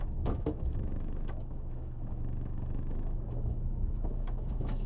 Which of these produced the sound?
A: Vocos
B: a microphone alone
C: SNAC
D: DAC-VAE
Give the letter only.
D